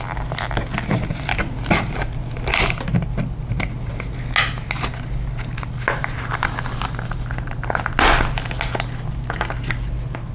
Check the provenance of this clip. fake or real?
real